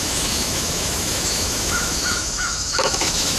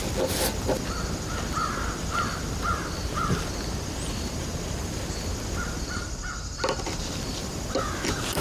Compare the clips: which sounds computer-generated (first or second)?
first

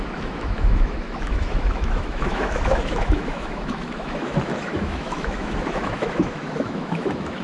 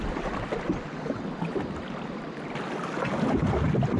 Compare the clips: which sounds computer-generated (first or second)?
first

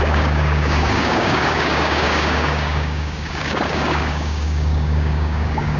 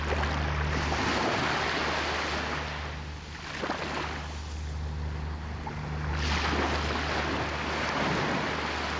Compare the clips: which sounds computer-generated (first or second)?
first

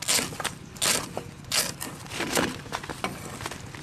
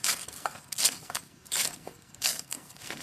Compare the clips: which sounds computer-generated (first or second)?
second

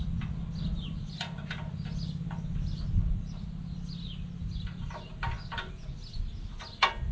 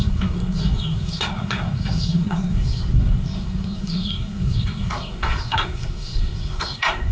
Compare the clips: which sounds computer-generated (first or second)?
second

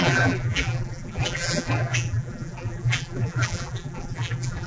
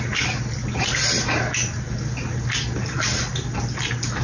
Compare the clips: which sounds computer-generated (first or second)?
first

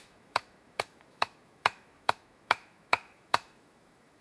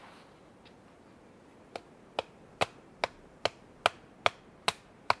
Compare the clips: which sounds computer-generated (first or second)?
first